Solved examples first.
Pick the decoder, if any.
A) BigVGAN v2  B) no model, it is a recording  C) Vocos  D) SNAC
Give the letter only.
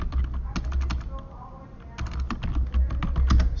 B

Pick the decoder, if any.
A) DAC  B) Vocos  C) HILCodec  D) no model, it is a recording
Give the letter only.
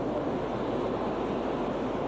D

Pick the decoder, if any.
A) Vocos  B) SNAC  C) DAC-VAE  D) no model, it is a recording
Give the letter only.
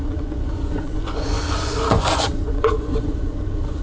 A